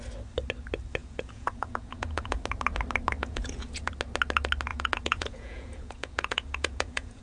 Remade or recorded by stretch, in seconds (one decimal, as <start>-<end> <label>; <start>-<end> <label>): 0.0-1.0 recorded; 1.0-2.4 remade; 2.4-3.2 recorded; 3.2-3.9 remade; 3.9-4.7 recorded; 4.7-7.2 remade